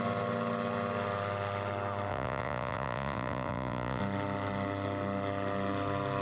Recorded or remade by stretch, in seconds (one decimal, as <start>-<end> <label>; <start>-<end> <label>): 0.0-2.1 recorded; 2.1-4.0 remade; 4.0-6.2 recorded